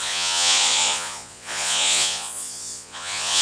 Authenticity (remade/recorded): remade